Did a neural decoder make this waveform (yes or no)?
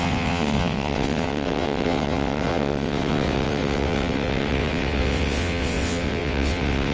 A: yes